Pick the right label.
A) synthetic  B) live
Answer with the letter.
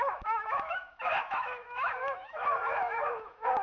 A